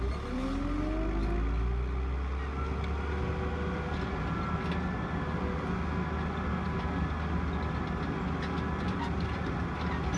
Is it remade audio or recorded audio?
recorded